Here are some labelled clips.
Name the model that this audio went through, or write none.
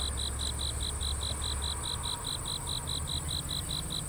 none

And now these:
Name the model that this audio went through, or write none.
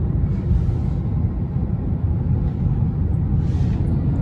none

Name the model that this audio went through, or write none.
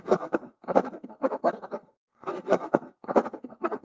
codec, SNAC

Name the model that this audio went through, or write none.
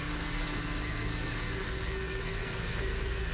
codec, SNAC